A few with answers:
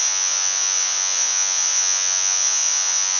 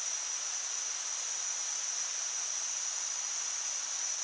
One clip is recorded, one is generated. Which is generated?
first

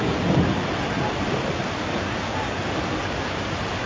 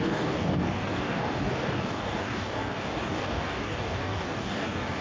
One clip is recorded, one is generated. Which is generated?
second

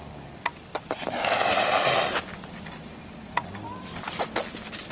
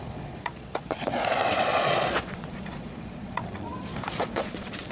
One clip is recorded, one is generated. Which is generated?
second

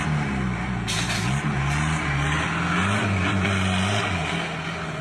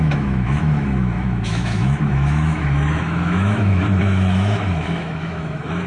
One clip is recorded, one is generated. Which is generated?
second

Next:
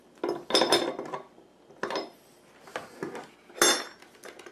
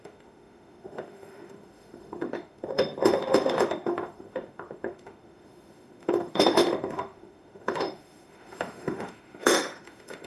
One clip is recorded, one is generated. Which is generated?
second